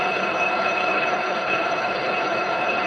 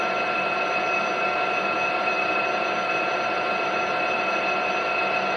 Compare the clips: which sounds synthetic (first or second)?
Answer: first